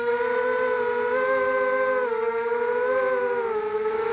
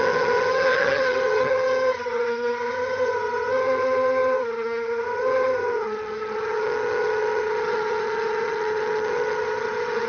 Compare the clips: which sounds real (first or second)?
first